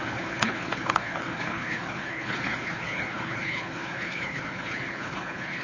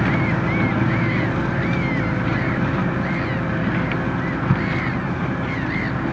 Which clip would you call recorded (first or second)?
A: second